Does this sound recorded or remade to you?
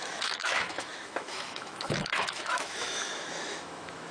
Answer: remade